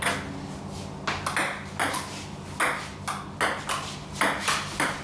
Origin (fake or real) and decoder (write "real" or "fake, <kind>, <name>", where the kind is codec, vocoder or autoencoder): real